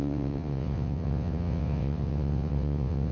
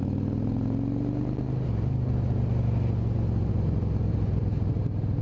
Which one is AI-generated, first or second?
first